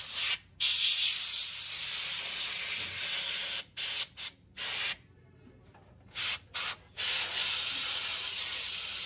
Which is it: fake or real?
real